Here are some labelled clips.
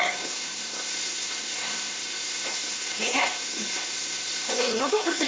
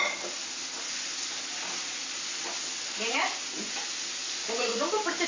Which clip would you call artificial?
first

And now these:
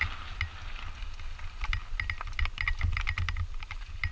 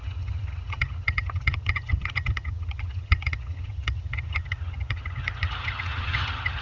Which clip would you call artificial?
second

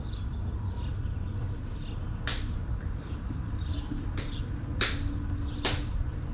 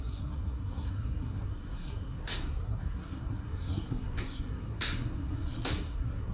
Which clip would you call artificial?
second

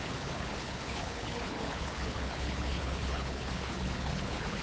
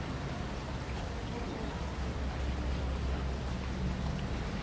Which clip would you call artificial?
first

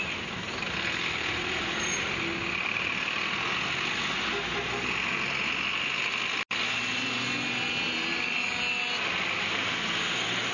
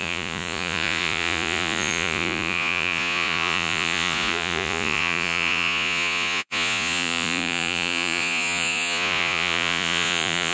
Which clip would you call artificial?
second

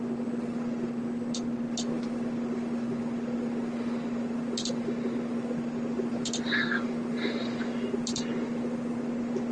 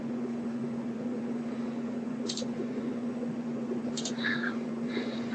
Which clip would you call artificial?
second